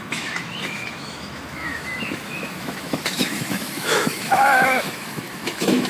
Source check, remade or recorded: remade